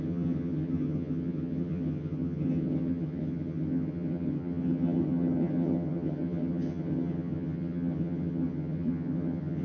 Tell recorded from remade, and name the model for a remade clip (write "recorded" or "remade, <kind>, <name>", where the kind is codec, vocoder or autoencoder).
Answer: remade, vocoder, HiFi-GAN